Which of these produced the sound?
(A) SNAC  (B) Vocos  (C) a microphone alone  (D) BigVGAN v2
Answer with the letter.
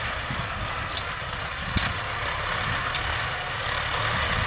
C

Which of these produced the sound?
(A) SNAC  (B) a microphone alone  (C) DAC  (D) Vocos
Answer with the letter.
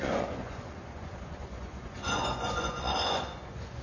D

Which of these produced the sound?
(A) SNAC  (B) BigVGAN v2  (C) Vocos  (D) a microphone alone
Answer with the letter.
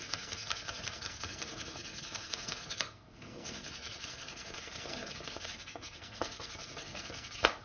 A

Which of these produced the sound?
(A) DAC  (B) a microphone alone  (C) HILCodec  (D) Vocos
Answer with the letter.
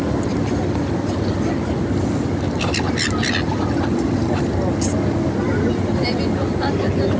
B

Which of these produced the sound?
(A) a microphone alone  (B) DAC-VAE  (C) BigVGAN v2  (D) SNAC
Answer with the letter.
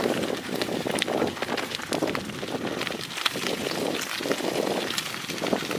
A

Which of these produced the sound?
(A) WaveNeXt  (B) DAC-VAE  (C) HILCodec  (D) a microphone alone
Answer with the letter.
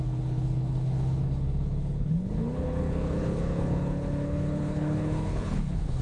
C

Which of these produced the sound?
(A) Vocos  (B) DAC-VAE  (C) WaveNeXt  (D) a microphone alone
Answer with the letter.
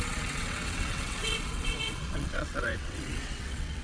C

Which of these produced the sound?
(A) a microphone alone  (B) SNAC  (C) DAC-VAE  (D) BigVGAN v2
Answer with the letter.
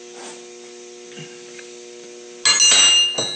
A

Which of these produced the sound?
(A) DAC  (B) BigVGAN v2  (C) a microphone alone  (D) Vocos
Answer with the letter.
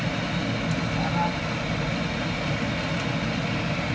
C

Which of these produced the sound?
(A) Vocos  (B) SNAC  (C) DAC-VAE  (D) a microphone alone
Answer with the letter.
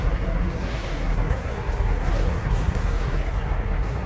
B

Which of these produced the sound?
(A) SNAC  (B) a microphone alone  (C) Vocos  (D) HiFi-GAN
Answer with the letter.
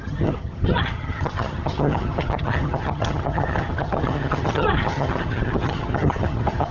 D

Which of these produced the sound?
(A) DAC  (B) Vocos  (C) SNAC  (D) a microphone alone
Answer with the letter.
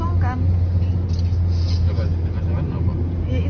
D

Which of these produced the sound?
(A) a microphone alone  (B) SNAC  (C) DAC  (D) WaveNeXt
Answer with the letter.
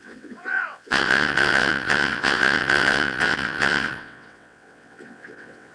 D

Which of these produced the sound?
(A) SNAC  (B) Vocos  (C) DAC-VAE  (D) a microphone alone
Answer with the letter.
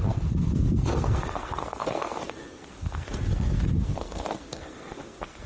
A